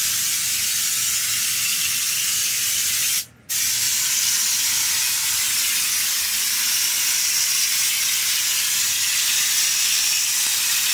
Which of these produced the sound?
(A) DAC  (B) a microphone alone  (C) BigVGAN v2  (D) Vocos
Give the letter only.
B